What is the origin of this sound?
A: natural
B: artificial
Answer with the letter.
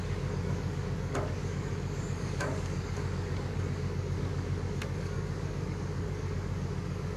B